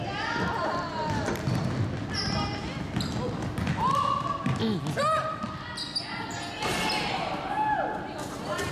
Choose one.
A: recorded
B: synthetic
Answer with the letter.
A